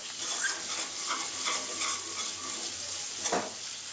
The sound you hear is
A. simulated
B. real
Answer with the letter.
B